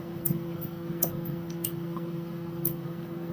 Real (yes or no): no